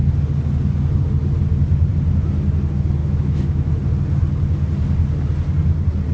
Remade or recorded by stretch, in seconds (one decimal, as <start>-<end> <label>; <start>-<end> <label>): 0.0-3.0 recorded; 3.0-3.7 remade; 3.7-6.1 recorded